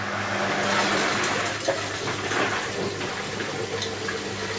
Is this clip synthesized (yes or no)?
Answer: no